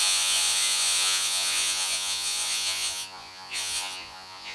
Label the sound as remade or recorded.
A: remade